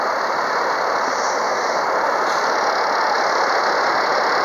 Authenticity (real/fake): real